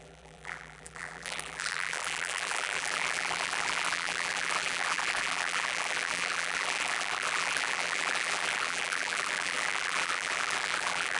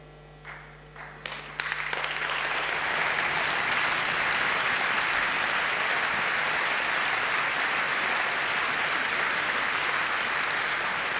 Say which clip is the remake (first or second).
first